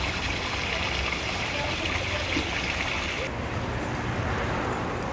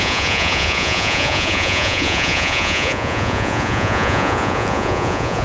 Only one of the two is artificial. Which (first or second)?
second